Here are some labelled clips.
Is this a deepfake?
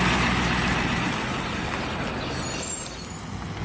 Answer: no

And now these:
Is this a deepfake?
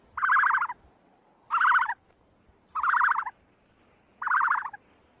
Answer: no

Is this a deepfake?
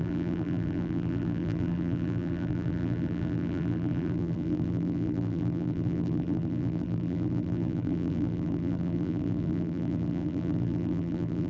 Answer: yes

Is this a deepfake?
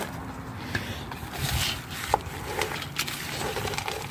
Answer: no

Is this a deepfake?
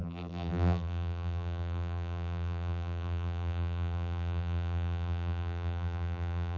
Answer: yes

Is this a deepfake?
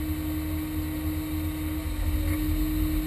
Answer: no